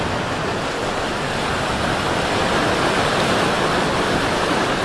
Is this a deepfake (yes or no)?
no